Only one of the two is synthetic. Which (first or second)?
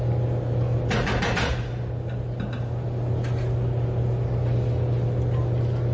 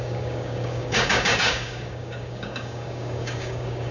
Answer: second